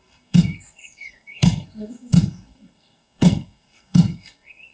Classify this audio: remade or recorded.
remade